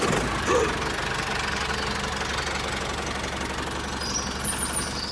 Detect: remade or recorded recorded